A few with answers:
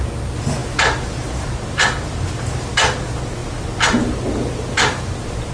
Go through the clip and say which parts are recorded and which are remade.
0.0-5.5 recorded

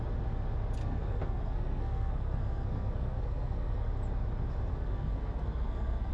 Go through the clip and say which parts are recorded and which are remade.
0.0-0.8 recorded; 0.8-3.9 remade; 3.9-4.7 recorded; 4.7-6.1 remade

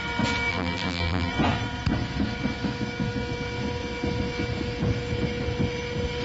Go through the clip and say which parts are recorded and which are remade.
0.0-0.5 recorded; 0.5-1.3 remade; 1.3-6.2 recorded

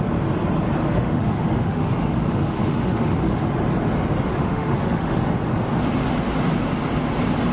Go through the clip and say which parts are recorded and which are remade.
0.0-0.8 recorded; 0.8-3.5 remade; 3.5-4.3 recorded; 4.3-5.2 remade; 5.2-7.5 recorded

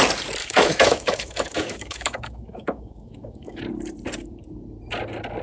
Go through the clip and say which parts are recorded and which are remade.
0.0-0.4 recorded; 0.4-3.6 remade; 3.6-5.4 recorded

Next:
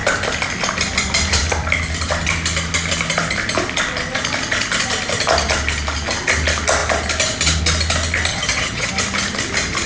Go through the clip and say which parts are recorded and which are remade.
0.0-8.3 recorded; 8.3-8.9 remade; 8.9-9.9 recorded